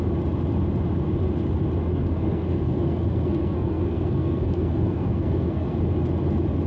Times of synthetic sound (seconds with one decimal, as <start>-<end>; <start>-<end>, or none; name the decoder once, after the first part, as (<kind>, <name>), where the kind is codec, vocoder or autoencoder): 1.8-5.8 (codec, SNAC)

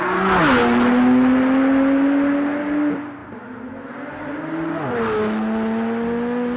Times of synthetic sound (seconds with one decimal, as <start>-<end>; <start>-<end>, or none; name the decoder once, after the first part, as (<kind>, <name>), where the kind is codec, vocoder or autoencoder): none

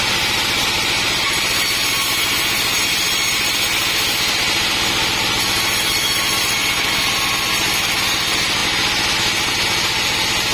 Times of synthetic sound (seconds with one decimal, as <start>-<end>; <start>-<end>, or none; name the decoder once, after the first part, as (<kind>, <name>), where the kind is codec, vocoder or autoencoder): none

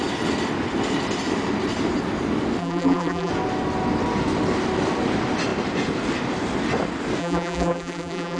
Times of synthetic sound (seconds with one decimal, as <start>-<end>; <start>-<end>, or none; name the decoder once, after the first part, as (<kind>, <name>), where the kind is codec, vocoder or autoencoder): 2.6-3.3 (vocoder, BigVGAN v2); 7.2-8.4

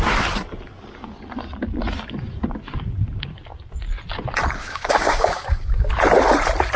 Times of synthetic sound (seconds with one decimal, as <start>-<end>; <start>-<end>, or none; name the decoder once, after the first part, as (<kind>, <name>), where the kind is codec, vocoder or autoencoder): 4.6-5.9 (codec, DAC)